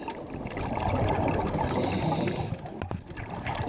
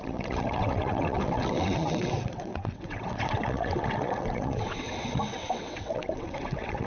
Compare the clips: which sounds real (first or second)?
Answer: first